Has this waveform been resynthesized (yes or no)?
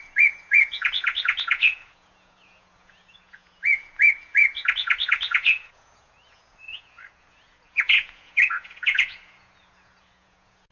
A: yes